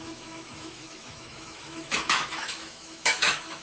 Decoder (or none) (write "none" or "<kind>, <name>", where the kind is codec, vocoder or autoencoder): autoencoder, DAC-VAE